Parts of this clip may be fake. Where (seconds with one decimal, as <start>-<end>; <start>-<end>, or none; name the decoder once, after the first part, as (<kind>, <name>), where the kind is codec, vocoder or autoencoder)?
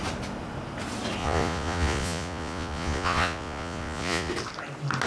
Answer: 1.2-4.3 (vocoder, Vocos)